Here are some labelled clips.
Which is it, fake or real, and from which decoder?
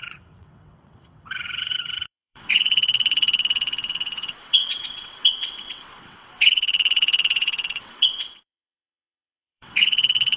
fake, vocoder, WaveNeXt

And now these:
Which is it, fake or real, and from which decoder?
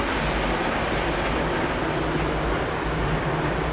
real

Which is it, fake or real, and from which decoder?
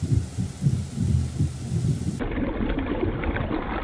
real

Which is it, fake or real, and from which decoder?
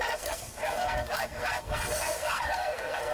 fake, codec, SNAC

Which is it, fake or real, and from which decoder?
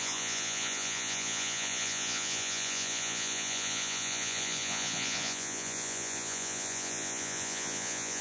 fake, vocoder, Vocos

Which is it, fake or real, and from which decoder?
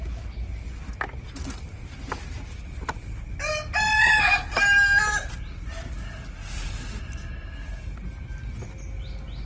real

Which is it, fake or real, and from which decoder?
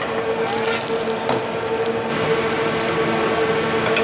real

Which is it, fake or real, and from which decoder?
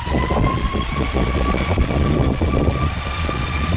fake, vocoder, Vocos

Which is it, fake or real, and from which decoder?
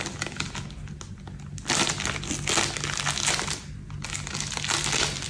real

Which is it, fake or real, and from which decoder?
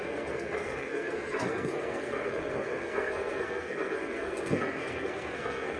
fake, codec, SNAC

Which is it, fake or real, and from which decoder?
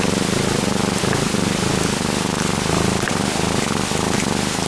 real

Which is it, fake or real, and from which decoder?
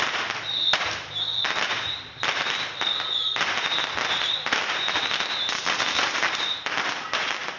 real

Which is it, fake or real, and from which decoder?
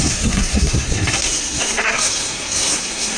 fake, codec, SNAC